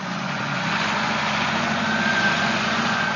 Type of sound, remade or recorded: remade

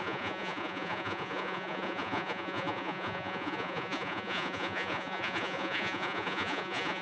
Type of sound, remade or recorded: remade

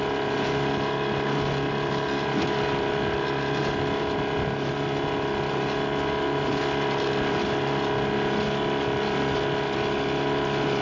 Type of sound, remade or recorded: recorded